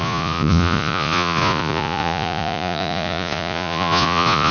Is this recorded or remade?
remade